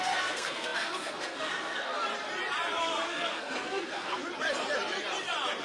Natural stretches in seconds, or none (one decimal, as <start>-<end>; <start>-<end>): 2.1-2.8; 4.2-5.6